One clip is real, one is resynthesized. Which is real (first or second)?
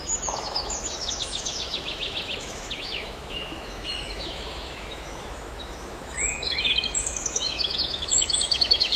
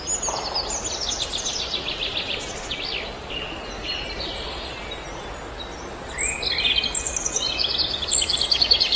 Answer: second